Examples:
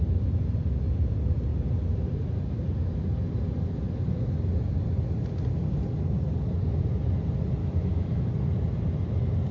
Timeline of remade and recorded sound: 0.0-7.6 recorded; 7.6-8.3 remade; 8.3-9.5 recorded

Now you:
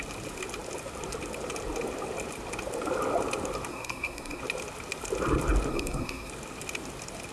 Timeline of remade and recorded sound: 0.0-3.7 recorded; 3.7-4.4 remade; 4.4-5.7 recorded; 5.7-6.3 remade; 6.3-7.3 recorded